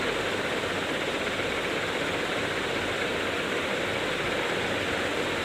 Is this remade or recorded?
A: recorded